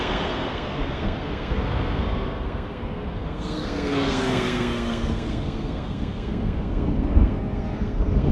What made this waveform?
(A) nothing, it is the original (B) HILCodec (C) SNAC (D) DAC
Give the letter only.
C